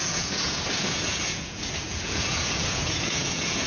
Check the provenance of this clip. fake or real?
fake